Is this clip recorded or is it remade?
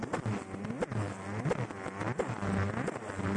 recorded